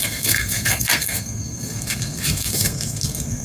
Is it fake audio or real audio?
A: fake